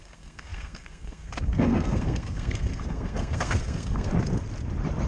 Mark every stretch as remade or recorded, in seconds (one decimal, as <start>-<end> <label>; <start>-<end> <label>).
0.0-4.1 remade; 4.1-5.1 recorded